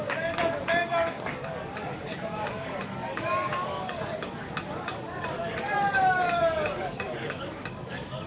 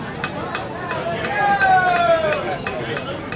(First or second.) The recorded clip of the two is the second